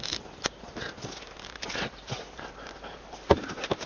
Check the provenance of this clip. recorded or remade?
recorded